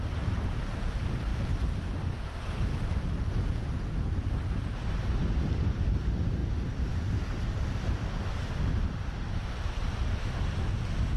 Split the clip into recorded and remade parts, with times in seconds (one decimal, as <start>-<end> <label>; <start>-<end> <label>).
0.0-2.7 remade; 2.7-3.3 recorded; 3.3-6.4 remade; 6.4-9.5 recorded; 9.5-10.0 remade; 10.0-11.2 recorded